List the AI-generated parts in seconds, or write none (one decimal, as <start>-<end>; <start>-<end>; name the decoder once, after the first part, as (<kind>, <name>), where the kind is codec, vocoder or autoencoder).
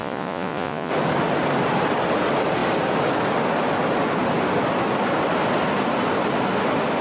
0.0-0.9 (vocoder, Vocos)